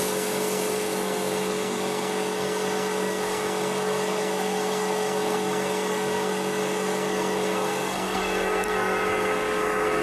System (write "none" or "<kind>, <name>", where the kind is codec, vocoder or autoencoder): codec, SNAC